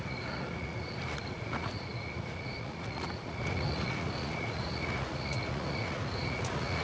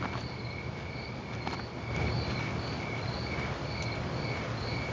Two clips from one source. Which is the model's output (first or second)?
first